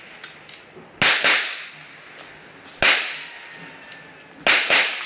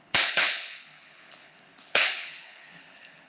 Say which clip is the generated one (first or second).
second